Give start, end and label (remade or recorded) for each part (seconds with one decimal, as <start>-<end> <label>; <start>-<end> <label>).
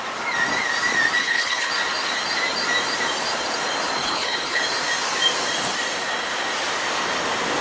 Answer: 0.0-1.2 recorded; 1.2-1.7 remade; 1.7-4.0 recorded; 4.0-4.6 remade; 4.6-7.6 recorded